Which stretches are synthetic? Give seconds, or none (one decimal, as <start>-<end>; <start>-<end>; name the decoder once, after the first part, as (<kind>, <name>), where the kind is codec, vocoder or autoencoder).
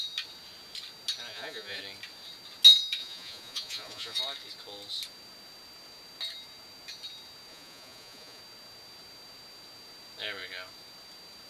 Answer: 1.3-1.8 (vocoder, Vocos); 3.0-4.2; 7.5-8.4